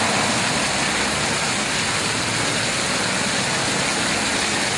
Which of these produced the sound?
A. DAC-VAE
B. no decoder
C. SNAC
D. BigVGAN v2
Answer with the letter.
B